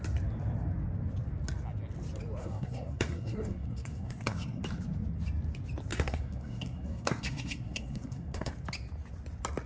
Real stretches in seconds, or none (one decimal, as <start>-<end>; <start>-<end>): 0.0-2.4; 4.6-5.9; 8.5-9.7